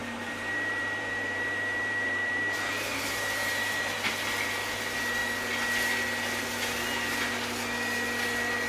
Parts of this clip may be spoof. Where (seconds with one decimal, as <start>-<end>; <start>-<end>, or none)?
0.0-3.8